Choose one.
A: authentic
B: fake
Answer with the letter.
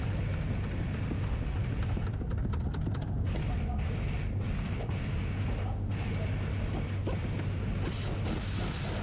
A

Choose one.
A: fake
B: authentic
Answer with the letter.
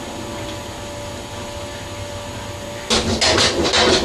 B